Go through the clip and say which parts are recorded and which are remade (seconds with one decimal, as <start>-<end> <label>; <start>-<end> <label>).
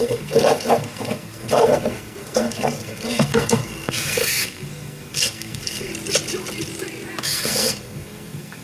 0.0-5.9 remade; 5.9-7.2 recorded; 7.2-8.6 remade